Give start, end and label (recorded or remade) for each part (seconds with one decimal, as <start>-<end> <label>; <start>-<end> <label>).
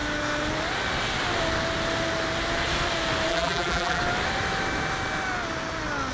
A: 0.0-3.3 recorded; 3.3-4.0 remade; 4.0-6.1 recorded